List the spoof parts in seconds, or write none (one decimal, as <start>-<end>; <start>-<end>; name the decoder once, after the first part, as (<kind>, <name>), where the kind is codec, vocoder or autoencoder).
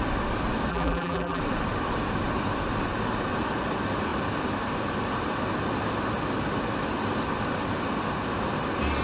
0.7-1.4 (vocoder, BigVGAN v2)